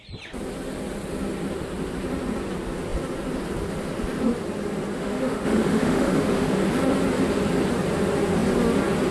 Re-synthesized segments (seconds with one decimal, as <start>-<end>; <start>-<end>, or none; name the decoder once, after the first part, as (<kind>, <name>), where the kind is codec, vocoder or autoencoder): 5.0-6.6 (autoencoder, DAC-VAE)